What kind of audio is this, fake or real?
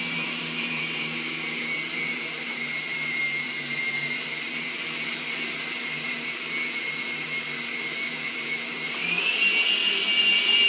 fake